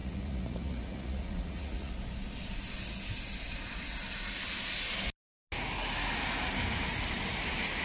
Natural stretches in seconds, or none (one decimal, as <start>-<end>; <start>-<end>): 1.9-7.8